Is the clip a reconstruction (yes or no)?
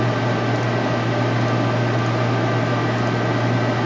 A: no